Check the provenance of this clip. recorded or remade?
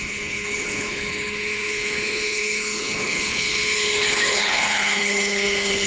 remade